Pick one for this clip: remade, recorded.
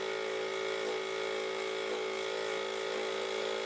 recorded